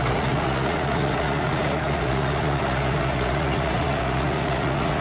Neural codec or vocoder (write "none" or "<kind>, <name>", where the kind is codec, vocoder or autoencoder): vocoder, Vocos